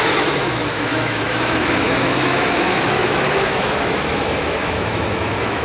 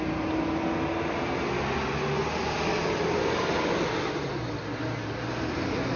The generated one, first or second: first